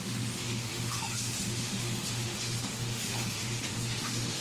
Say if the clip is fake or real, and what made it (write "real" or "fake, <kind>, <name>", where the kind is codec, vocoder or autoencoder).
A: fake, autoencoder, DAC-VAE